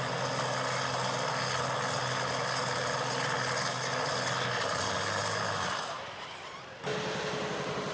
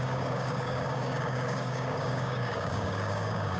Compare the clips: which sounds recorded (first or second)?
first